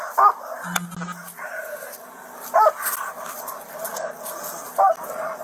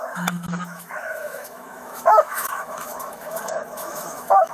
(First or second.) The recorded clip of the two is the first